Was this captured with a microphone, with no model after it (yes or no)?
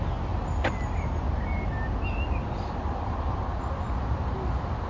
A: yes